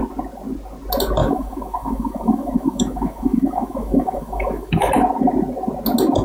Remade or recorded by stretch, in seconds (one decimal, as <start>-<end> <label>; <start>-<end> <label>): 0.0-1.2 recorded; 1.2-4.9 remade; 4.9-6.2 recorded